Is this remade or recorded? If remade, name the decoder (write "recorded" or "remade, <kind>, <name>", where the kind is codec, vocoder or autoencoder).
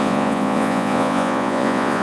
remade, vocoder, Vocos